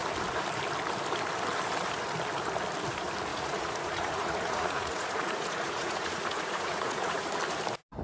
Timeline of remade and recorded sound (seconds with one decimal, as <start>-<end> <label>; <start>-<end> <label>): 0.0-3.3 recorded; 3.3-7.4 remade; 7.4-8.0 recorded